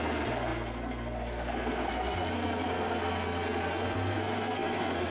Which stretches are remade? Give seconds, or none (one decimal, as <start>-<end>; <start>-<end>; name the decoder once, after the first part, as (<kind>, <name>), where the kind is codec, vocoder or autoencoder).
0.0-5.1 (codec, SNAC)